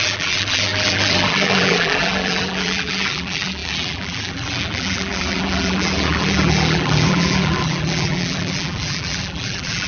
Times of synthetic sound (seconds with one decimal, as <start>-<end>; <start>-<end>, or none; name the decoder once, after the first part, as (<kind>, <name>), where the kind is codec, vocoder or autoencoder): 0.0-9.9 (vocoder, BigVGAN v2)